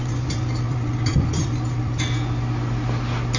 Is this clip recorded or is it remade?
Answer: recorded